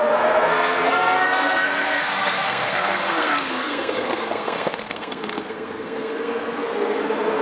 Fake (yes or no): yes